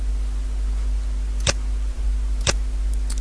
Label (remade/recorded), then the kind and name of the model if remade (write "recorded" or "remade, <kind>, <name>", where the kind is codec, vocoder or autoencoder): recorded